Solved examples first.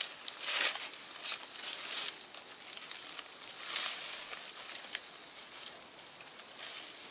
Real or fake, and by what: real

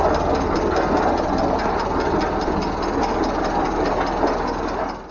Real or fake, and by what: real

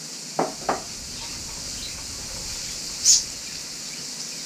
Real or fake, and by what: real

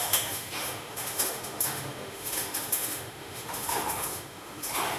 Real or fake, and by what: fake, autoencoder, DAC-VAE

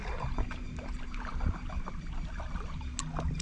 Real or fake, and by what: real